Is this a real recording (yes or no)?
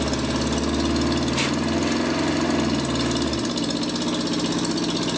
yes